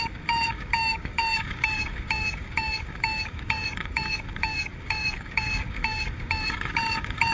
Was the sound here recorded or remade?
remade